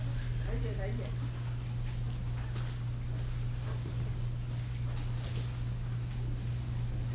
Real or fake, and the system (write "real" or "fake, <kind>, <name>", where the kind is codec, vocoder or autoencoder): real